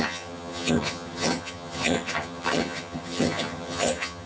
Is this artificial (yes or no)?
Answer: yes